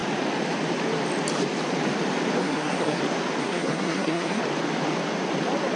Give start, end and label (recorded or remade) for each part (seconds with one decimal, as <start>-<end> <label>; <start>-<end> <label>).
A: 0.0-2.4 recorded; 2.4-3.0 remade; 3.0-3.4 recorded; 3.4-4.4 remade; 4.4-5.8 recorded

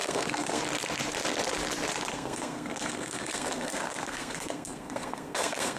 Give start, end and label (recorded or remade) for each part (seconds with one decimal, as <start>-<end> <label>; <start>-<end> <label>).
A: 0.0-0.6 remade; 0.6-2.1 recorded; 2.1-5.8 remade

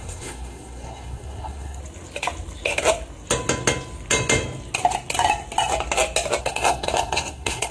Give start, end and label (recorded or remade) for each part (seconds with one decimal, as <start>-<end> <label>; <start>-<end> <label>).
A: 0.0-1.8 remade; 1.8-6.4 recorded; 6.4-7.7 remade

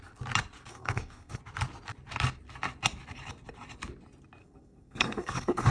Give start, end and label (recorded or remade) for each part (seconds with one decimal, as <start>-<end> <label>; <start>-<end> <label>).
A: 0.0-0.7 recorded; 0.7-1.4 remade; 1.4-4.4 recorded; 4.4-5.7 remade